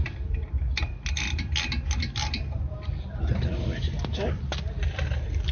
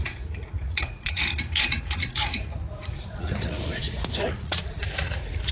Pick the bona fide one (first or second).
first